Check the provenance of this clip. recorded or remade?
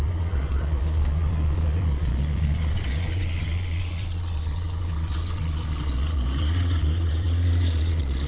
remade